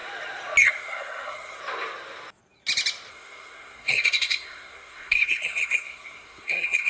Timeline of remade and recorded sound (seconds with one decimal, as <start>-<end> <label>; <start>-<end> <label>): 0.0-0.6 recorded; 0.6-1.6 remade; 1.6-3.1 recorded; 3.1-6.9 remade